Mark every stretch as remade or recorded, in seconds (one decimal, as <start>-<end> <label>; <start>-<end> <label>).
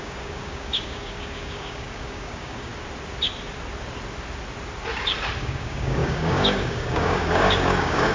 0.0-2.7 remade; 2.7-5.4 recorded; 5.4-8.1 remade